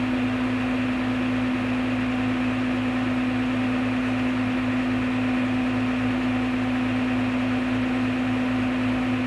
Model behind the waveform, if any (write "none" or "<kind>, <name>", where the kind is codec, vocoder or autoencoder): none